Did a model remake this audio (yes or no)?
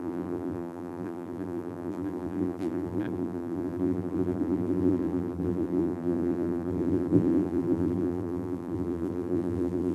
yes